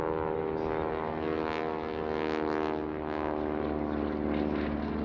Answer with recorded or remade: recorded